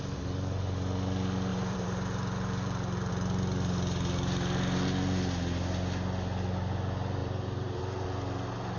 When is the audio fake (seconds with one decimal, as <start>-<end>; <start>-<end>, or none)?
1.5-3.1; 7.2-7.8